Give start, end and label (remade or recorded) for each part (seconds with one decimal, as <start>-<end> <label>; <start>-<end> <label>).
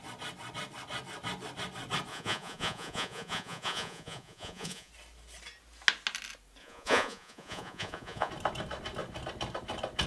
0.0-2.1 recorded; 2.1-4.9 remade; 4.9-6.6 recorded; 6.6-8.3 remade; 8.3-10.1 recorded